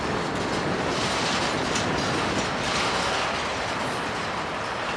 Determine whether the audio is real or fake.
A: real